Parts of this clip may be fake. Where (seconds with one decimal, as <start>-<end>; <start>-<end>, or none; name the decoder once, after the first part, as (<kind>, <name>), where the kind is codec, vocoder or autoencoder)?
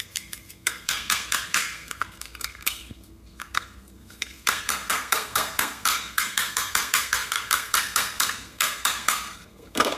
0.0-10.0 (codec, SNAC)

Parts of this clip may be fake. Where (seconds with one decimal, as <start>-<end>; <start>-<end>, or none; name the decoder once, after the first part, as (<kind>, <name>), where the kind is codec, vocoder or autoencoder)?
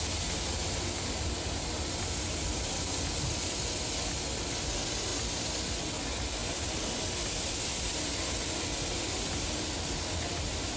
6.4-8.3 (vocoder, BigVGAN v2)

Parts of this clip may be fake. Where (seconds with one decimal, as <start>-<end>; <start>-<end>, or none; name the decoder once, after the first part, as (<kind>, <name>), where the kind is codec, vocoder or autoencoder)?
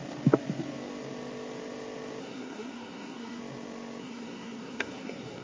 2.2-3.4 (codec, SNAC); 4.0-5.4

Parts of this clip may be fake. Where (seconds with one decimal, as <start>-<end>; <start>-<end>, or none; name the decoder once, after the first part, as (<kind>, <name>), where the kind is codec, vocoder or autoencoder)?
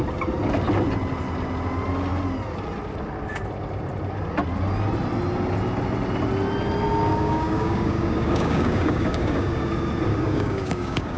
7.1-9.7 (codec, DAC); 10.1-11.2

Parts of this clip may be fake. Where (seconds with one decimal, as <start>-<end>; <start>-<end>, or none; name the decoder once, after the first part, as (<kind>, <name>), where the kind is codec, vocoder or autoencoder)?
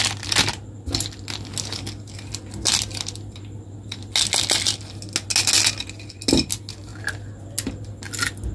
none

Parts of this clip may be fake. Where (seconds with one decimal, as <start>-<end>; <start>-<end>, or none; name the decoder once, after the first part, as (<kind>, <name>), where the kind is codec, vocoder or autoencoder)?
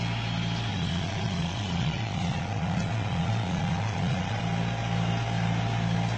0.7-4.4 (vocoder, Vocos)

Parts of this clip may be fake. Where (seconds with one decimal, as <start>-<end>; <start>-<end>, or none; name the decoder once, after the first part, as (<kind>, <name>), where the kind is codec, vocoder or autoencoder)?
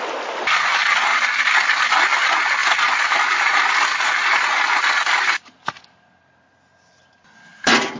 none